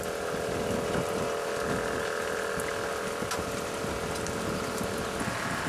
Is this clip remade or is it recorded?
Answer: recorded